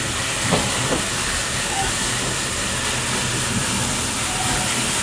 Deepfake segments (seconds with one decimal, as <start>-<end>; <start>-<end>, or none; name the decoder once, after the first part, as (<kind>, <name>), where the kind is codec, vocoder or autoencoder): 1.2-1.9 (codec, DAC)

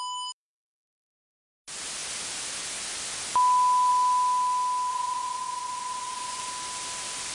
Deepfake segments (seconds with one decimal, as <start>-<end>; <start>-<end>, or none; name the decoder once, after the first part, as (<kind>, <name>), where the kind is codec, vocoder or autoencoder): 4.9-6.5 (vocoder, Vocos)

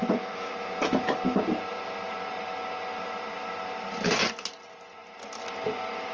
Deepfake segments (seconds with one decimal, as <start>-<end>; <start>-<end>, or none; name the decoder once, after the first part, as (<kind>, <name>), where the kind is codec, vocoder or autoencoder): 0.0-0.5 (autoencoder, DAC-VAE)

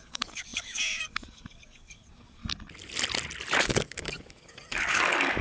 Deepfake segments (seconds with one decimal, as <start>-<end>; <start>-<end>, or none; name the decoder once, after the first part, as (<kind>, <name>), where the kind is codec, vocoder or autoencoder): 0.0-2.4 (codec, DAC); 3.6-5.4